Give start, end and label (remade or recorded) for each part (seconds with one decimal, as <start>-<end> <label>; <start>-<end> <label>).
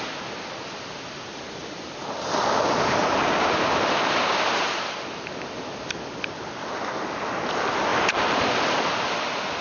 0.0-1.6 recorded; 1.6-2.4 remade; 2.4-3.0 recorded; 3.0-4.3 remade; 4.3-7.9 recorded; 7.9-8.5 remade; 8.5-9.6 recorded